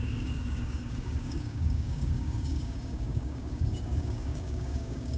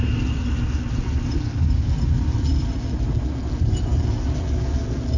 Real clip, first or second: second